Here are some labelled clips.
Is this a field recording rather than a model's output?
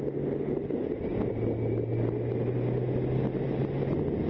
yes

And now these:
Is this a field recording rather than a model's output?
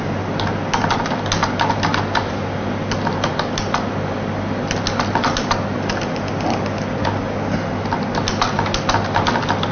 yes